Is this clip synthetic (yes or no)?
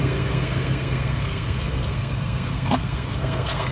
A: yes